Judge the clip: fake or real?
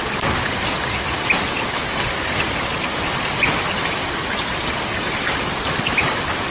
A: real